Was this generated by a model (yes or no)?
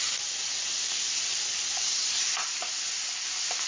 no